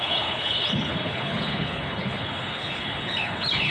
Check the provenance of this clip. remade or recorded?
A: remade